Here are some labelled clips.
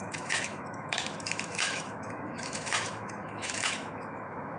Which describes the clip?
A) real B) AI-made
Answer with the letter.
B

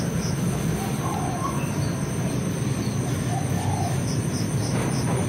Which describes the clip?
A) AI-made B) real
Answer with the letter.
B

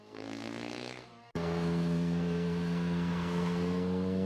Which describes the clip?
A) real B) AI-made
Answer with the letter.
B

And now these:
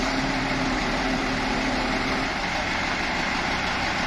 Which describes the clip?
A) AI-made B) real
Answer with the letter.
A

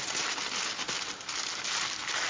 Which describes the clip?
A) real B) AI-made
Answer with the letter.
A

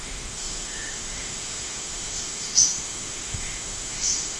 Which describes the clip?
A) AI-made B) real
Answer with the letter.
A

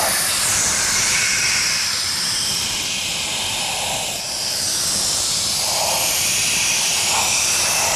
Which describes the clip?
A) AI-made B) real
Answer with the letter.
A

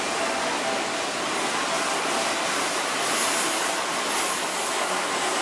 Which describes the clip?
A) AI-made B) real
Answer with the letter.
B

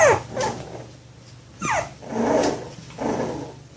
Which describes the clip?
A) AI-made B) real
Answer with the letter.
B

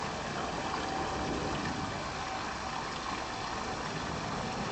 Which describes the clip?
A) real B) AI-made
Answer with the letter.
A